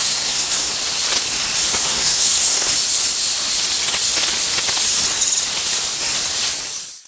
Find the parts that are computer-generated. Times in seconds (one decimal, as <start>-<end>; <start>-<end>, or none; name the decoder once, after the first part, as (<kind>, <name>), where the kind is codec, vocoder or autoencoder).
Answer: 0.0-0.7 (codec, SNAC); 1.9-2.7